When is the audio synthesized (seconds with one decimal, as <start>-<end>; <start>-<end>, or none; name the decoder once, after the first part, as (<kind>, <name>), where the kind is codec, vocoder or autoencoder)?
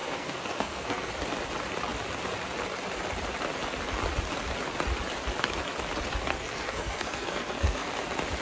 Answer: 0.0-1.1 (codec, SNAC); 6.3-7.9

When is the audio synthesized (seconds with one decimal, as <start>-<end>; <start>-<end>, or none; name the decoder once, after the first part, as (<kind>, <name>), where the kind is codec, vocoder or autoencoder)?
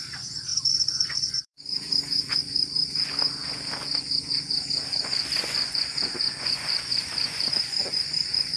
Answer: 0.0-8.6 (vocoder, Vocos)